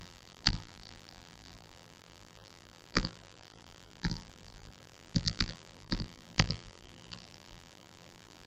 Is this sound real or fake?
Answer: fake